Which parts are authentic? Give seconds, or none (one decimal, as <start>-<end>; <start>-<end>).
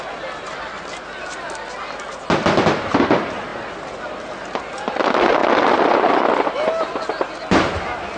0.0-8.2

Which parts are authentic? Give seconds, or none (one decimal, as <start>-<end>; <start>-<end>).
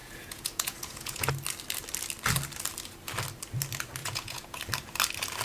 1.3-4.0; 4.6-5.4